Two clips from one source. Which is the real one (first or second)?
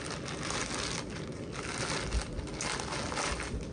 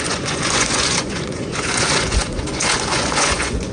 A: first